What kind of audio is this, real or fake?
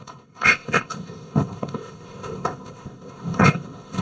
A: fake